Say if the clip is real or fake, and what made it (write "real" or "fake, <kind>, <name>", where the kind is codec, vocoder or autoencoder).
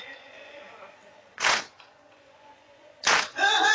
fake, vocoder, Vocos